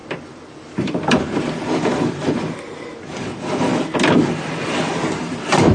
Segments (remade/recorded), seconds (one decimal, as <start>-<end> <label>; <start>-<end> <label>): 0.0-3.7 remade; 3.7-4.6 recorded; 4.6-5.7 remade